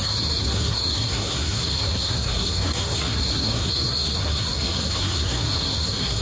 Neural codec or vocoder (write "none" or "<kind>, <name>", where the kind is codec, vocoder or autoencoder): codec, SNAC